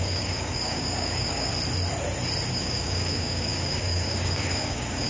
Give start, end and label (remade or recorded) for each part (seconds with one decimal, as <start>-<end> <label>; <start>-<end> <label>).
0.0-1.5 remade; 1.5-2.5 recorded; 2.5-5.1 remade

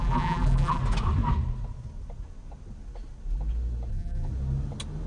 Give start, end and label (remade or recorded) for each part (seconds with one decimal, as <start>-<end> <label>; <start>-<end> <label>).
0.0-0.8 remade; 0.8-3.9 recorded; 3.9-4.3 remade; 4.3-5.1 recorded

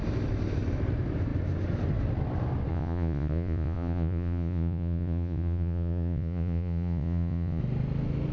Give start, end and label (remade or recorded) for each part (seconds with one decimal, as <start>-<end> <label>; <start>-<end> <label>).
0.0-2.7 recorded; 2.7-7.6 remade; 7.6-8.3 recorded

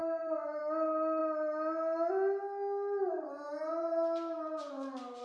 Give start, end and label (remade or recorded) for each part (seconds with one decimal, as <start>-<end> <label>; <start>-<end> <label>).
0.0-0.6 remade; 0.6-5.2 recorded